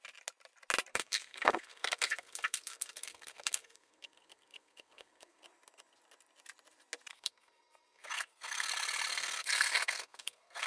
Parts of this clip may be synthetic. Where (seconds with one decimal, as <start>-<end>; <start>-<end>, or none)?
0.9-5.4; 7.1-8.7; 9.1-10.7